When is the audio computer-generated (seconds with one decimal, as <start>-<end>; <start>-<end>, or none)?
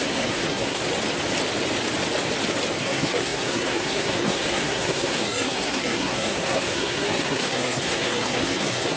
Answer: 0.0-0.8; 2.8-9.0